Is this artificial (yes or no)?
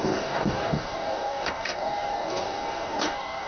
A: yes